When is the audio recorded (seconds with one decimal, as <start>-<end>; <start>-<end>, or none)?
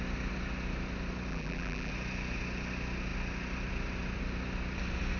0.0-1.3; 1.9-5.2